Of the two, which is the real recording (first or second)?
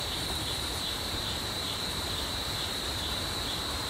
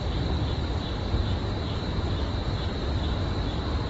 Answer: second